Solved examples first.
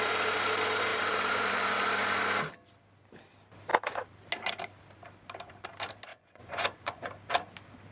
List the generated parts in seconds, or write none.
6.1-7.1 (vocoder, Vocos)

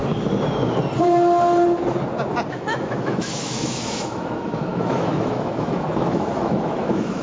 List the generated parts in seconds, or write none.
2.5-7.2 (autoencoder, DAC-VAE)